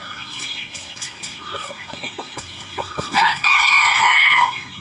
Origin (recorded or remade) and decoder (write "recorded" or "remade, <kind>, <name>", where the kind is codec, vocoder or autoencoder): remade, codec, SNAC